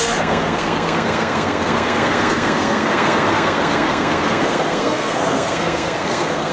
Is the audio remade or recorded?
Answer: remade